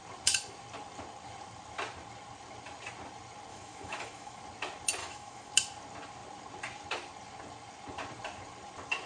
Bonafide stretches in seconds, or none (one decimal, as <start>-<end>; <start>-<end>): 0.0-3.5; 4.4-5.0; 5.5-9.1